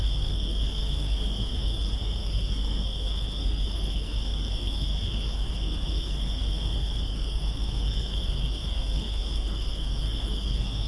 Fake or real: fake